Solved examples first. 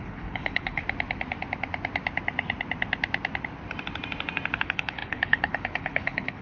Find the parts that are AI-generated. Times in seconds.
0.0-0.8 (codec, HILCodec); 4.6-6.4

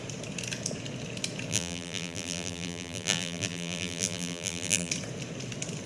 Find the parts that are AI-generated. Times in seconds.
1.5-4.9 (vocoder, BigVGAN v2)